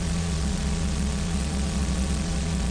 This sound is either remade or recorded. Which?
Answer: remade